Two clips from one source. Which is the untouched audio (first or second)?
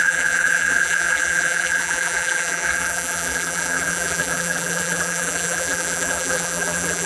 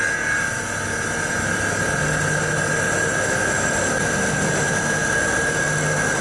second